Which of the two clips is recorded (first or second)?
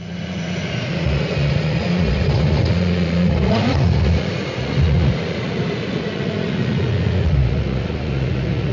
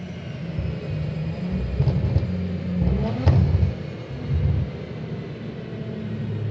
second